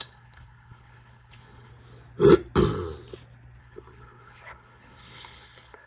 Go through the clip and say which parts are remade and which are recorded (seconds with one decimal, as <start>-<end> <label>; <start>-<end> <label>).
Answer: 0.0-1.7 remade; 1.7-3.6 recorded; 3.6-5.9 remade